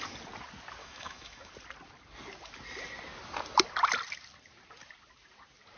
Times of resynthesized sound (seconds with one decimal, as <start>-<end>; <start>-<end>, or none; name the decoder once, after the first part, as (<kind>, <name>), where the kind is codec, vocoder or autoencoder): 0.8-1.5 (autoencoder, DAC-VAE)